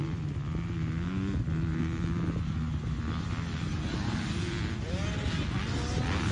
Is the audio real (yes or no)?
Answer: yes